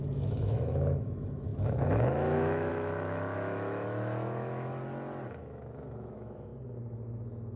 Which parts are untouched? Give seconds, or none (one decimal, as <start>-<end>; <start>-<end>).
4.8-5.3; 6.5-7.6